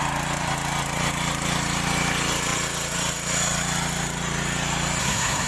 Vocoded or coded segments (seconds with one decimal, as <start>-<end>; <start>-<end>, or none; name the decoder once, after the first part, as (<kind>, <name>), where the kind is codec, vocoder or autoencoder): 5.0-5.5 (codec, SNAC)